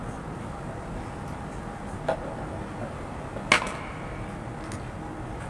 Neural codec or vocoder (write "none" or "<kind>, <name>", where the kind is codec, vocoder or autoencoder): none